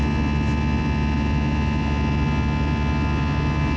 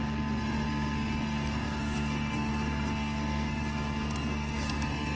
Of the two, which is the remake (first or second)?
second